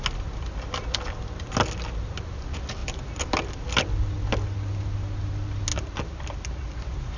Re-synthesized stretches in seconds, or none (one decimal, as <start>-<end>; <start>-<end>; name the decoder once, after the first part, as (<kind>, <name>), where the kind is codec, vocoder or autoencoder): none